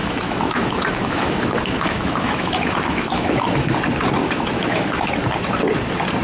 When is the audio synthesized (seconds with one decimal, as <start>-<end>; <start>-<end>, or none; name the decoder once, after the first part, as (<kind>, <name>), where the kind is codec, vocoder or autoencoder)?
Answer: 0.0-3.7 (autoencoder, DAC-VAE); 4.2-5.1